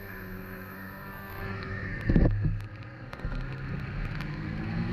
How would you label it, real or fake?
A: fake